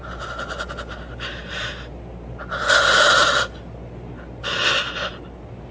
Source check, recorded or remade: recorded